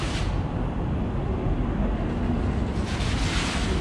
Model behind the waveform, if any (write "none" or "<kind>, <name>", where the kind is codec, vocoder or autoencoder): none